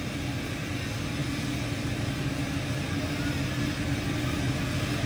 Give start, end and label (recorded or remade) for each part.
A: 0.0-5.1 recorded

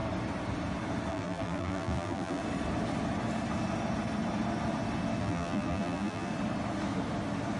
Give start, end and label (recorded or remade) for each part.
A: 0.0-1.1 recorded; 1.1-2.4 remade; 2.4-5.2 recorded; 5.2-6.3 remade; 6.3-7.6 recorded